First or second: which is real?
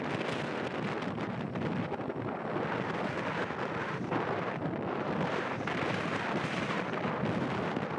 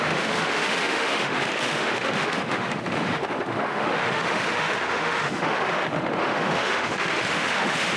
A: first